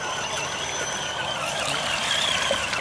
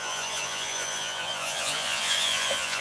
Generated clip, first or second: second